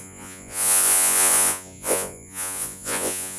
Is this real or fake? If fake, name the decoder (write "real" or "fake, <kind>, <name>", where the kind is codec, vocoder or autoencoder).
fake, vocoder, Vocos